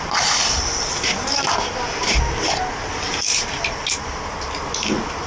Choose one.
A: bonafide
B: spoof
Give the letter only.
A